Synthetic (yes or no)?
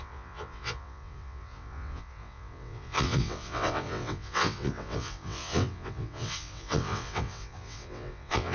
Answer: yes